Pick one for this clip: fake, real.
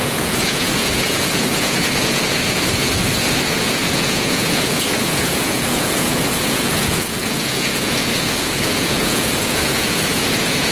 fake